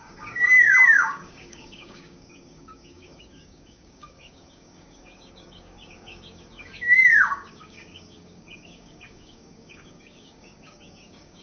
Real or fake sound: fake